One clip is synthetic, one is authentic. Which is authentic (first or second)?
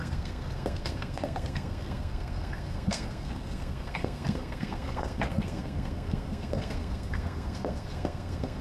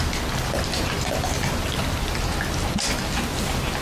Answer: second